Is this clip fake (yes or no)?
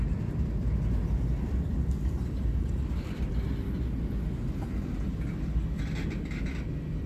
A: no